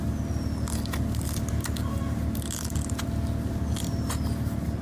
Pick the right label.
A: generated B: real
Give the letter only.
B